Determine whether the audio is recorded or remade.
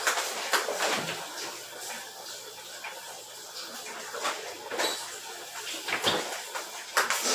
recorded